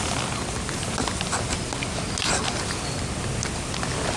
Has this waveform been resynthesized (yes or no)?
no